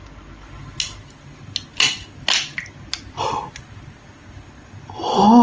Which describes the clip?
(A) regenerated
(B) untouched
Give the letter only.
B